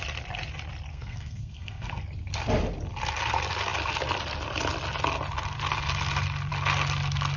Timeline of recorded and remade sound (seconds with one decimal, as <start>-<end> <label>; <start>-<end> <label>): 0.0-0.9 recorded; 0.9-2.0 remade; 2.0-7.4 recorded